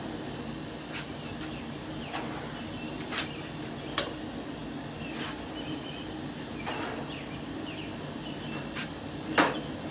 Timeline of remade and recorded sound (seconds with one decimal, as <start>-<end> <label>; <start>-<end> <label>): 0.0-9.9 recorded